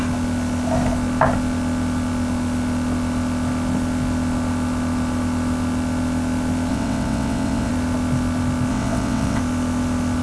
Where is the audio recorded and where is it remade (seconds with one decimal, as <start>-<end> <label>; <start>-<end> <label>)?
0.0-6.7 recorded; 6.7-7.7 remade; 7.7-8.7 recorded; 8.7-9.4 remade; 9.4-10.2 recorded